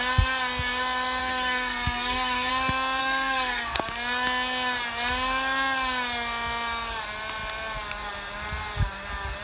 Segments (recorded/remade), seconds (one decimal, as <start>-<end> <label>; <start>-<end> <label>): 0.0-1.2 recorded; 1.2-2.5 remade; 2.5-3.0 recorded; 3.0-3.8 remade; 3.8-9.4 recorded